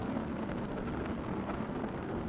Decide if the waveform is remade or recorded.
remade